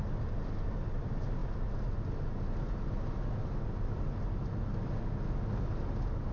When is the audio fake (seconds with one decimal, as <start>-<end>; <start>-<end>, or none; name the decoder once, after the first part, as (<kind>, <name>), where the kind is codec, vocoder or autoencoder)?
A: none